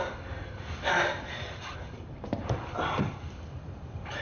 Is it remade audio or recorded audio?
recorded